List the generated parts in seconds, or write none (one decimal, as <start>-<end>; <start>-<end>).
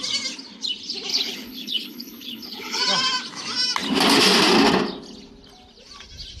1.1-2.8